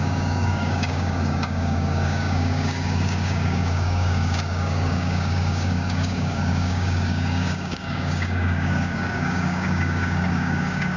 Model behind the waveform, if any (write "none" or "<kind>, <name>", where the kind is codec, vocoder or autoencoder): codec, DAC